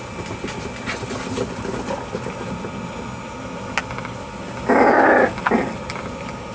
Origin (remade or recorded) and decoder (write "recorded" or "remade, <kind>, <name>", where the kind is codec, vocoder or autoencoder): recorded